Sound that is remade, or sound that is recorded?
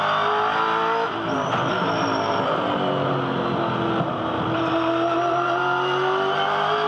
remade